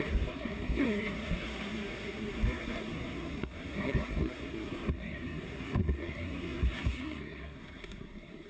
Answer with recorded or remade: remade